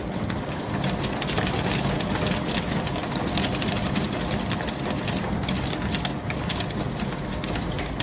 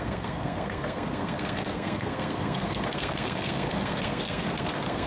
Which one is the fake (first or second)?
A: second